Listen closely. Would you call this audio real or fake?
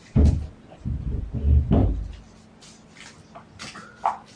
real